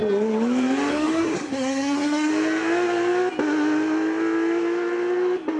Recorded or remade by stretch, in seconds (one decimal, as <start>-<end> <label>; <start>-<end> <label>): 0.0-0.9 recorded; 0.9-2.3 remade; 2.3-5.6 recorded